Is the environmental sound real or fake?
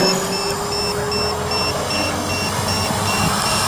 real